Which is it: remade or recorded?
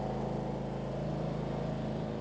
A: recorded